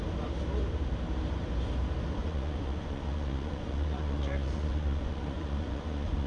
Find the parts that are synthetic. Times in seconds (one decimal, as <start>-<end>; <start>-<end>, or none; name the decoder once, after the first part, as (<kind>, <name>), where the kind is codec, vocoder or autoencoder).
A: 2.2-6.3 (vocoder, Vocos)